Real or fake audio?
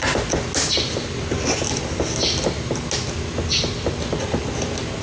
real